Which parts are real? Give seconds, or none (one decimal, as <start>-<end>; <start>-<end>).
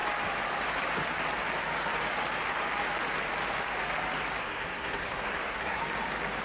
0.0-4.4; 5.8-6.4